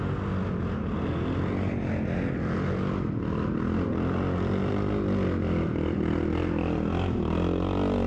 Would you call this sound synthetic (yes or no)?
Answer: no